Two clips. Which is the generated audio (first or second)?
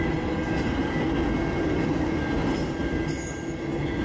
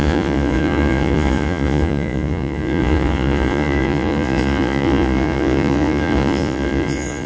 second